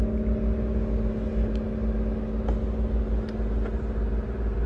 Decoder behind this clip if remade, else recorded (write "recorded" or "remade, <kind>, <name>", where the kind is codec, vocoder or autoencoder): recorded